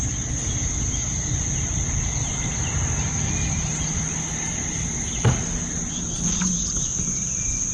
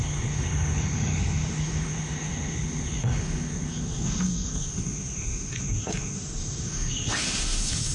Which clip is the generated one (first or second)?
second